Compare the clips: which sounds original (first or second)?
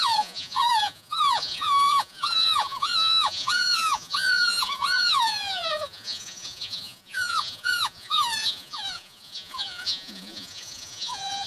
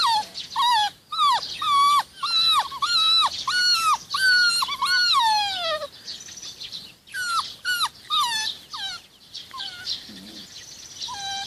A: second